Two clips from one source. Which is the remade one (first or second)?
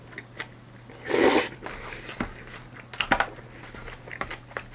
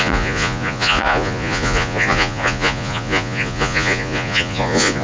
second